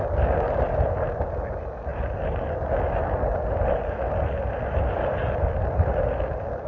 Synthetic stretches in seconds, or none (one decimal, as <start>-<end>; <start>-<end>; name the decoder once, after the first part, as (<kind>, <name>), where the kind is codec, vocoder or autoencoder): none